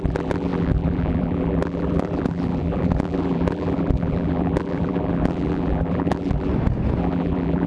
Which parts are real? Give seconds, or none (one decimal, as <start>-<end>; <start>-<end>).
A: 6.5-7.0